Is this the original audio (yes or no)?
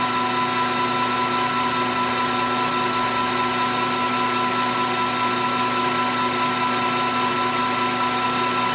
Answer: yes